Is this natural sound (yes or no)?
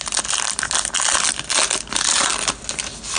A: yes